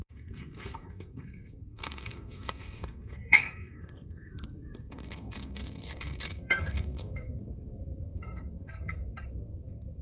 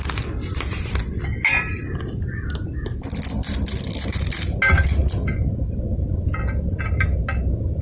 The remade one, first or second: first